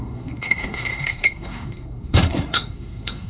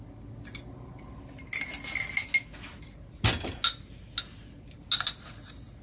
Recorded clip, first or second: second